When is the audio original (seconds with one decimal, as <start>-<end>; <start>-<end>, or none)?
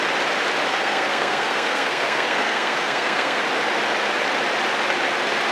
0.0-0.7; 3.4-5.5